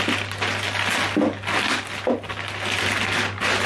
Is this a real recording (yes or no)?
yes